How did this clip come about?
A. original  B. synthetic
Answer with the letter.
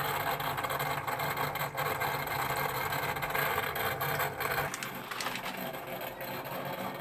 A